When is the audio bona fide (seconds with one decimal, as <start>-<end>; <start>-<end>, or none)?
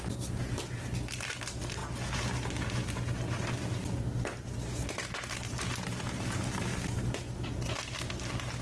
0.0-8.6